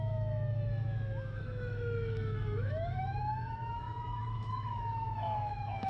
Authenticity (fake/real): fake